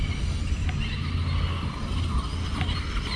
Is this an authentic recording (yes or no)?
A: yes